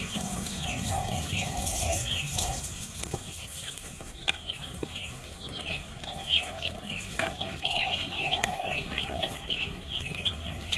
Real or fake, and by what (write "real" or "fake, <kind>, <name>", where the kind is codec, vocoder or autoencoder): fake, codec, SNAC